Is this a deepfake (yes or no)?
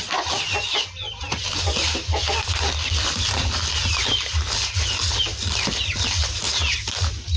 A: no